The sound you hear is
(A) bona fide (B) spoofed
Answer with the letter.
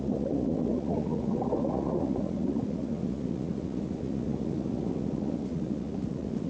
B